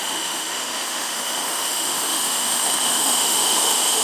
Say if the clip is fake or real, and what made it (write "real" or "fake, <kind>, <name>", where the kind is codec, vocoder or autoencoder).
fake, autoencoder, DAC-VAE